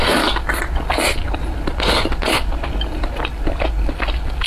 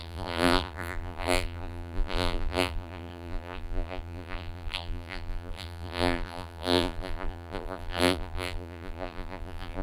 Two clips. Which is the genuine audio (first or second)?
first